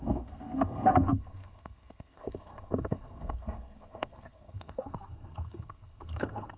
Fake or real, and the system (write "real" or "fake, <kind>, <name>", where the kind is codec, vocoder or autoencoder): fake, codec, SNAC